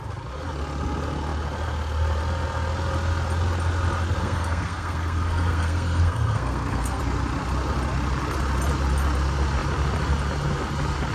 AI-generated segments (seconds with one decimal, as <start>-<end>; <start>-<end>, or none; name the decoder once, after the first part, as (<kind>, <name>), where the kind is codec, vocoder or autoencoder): 4.2-7.0 (codec, SNAC)